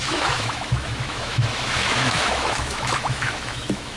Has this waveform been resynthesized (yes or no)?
yes